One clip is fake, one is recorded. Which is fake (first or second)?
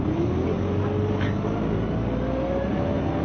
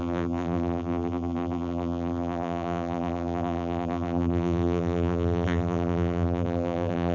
second